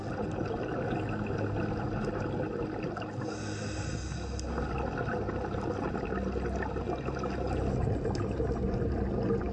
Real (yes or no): yes